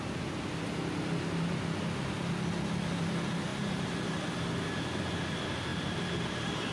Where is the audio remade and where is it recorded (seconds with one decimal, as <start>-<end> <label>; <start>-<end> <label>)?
0.0-3.5 recorded; 3.5-4.2 remade; 4.2-5.7 recorded; 5.7-6.7 remade